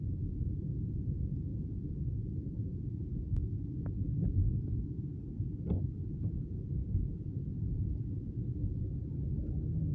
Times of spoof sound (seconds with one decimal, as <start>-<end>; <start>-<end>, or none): 0.0-4.4; 5.8-9.9